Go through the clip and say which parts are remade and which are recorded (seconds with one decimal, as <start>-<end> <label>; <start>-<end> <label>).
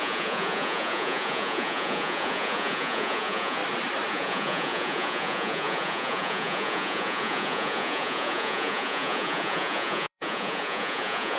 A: 0.0-3.6 remade; 3.6-4.1 recorded; 4.1-11.4 remade